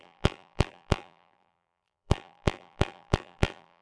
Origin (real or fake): fake